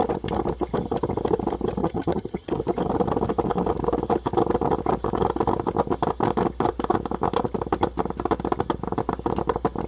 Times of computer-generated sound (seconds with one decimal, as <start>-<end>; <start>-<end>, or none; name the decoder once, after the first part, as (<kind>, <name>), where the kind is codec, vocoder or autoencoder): 1.8-2.5 (vocoder, HiFi-GAN)

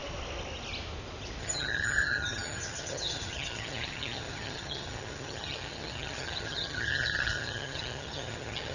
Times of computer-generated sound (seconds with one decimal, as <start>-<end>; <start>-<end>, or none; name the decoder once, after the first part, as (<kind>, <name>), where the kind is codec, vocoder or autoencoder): 1.4-8.7 (vocoder, HiFi-GAN)

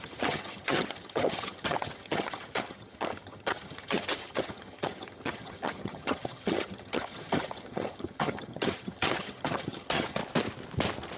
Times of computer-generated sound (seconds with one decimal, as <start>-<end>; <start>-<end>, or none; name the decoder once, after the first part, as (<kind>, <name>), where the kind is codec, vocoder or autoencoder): 0.0-10.2 (vocoder, HiFi-GAN)

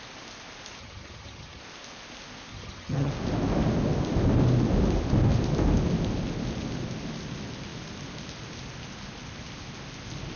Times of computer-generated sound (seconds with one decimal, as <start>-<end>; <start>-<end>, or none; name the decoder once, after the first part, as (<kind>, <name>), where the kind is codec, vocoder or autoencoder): 0.8-1.6 (vocoder, HiFi-GAN); 2.5-3.1